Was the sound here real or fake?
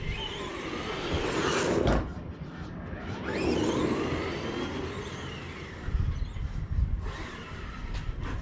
real